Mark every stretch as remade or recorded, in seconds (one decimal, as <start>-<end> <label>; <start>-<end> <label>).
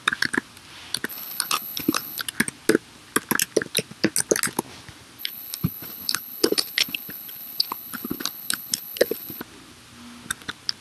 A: 0.0-1.1 recorded; 1.1-2.2 remade; 2.2-5.2 recorded; 5.2-9.4 remade; 9.4-10.8 recorded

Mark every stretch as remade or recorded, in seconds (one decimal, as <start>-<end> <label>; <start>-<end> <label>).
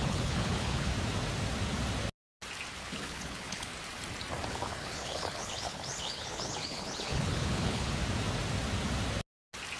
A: 0.0-0.9 remade; 0.9-2.8 recorded; 2.8-3.7 remade; 3.7-4.5 recorded; 4.5-8.0 remade; 8.0-9.8 recorded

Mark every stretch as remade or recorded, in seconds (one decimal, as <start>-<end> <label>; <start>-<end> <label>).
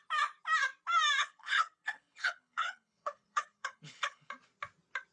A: 0.0-1.2 recorded; 1.2-4.3 remade; 4.3-5.1 recorded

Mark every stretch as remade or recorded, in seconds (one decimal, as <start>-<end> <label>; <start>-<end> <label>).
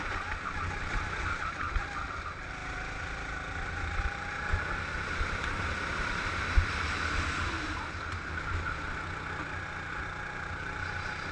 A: 0.0-11.3 recorded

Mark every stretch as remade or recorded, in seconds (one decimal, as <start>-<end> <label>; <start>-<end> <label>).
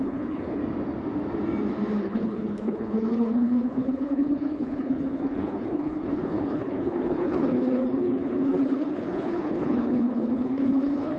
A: 0.0-0.6 remade; 0.6-2.0 recorded; 2.0-11.2 remade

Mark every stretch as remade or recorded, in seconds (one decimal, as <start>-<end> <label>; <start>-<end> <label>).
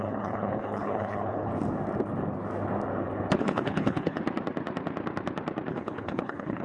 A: 0.0-1.5 remade; 1.5-3.4 recorded; 3.4-4.2 remade; 4.2-5.7 recorded; 5.7-6.6 remade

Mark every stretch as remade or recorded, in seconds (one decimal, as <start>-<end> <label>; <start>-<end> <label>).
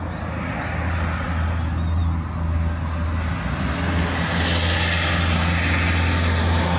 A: 0.0-6.8 recorded